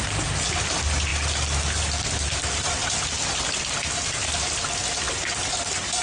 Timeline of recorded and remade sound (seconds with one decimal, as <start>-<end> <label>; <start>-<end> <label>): 0.0-6.0 recorded